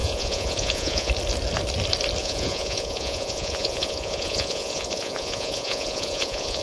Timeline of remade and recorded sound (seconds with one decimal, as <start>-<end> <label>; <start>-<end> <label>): 0.0-1.1 remade; 1.1-2.2 recorded; 2.2-6.6 remade